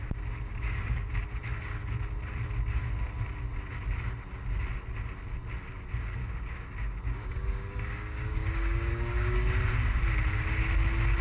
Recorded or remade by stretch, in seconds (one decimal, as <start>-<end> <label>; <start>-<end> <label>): 0.0-0.5 recorded; 0.5-1.1 remade; 1.1-6.2 recorded; 6.2-9.5 remade; 9.5-11.2 recorded